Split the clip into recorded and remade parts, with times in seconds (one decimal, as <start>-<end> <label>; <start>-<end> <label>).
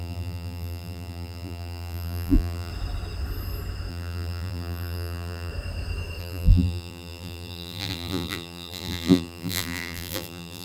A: 0.0-2.7 remade; 2.7-3.9 recorded; 3.9-5.5 remade; 5.5-6.2 recorded; 6.2-10.6 remade